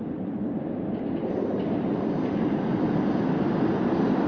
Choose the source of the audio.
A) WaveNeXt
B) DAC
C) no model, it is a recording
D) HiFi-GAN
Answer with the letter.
C